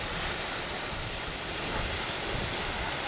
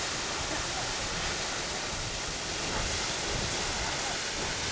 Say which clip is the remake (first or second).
first